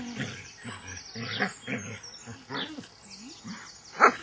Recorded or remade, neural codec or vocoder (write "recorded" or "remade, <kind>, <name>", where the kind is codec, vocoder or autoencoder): recorded